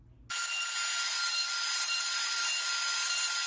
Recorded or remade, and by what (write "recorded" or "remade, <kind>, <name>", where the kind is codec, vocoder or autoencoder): recorded